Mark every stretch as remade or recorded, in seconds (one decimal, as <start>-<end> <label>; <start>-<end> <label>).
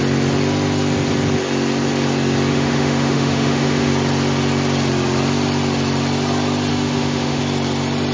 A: 0.0-2.5 recorded; 2.5-3.9 remade; 3.9-6.7 recorded; 6.7-7.4 remade; 7.4-8.1 recorded